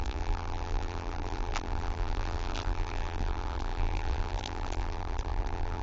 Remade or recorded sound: remade